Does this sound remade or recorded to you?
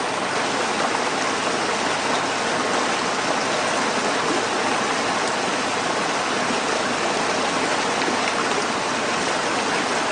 recorded